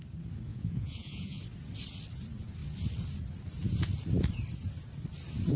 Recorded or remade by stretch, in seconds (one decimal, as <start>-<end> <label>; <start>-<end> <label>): 0.0-0.5 recorded; 0.5-1.4 remade; 1.4-5.6 recorded